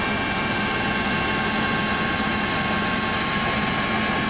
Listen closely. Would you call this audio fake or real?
real